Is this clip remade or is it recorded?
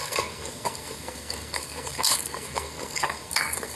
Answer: remade